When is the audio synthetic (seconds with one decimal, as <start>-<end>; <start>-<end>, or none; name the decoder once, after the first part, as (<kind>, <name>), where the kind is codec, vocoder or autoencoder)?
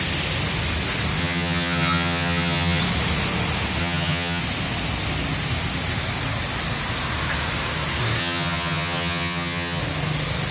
1.2-2.8 (vocoder, HiFi-GAN); 3.8-4.4; 8.2-9.8